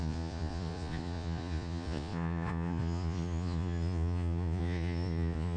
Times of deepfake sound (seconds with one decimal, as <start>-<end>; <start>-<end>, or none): 0.0-5.6